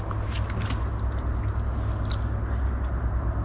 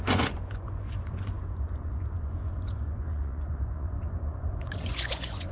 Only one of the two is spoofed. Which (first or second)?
second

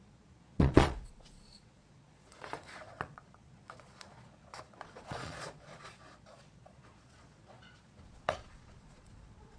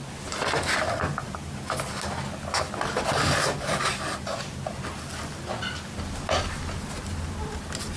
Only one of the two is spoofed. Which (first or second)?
first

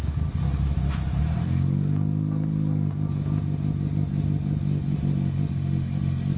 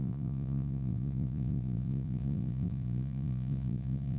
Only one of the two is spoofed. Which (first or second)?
second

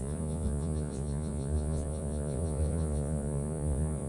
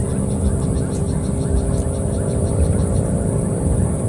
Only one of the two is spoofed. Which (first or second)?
first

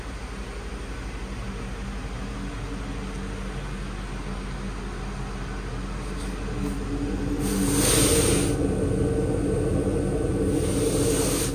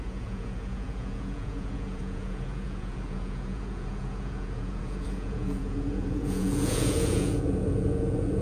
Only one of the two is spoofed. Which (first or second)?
second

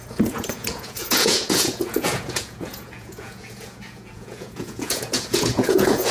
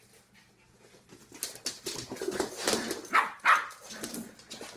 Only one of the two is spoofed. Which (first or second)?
first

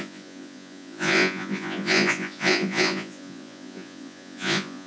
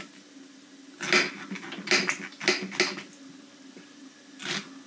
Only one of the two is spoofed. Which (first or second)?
first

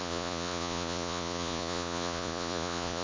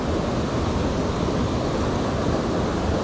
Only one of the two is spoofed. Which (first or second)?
first